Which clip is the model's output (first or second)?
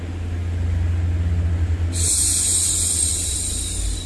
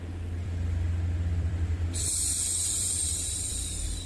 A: second